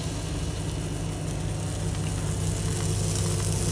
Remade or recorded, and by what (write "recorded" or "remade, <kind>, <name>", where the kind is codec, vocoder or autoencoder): recorded